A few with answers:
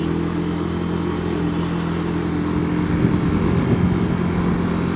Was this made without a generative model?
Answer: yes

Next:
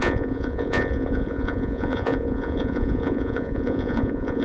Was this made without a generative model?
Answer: no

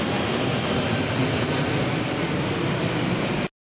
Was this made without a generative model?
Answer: yes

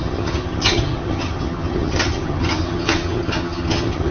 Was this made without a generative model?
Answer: no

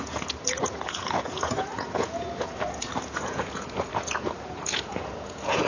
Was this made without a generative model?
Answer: no